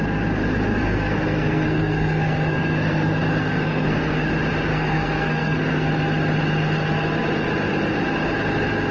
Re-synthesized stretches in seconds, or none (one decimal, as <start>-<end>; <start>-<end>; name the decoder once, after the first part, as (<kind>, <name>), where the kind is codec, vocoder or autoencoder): 0.7-4.2 (codec, SNAC); 4.7-5.9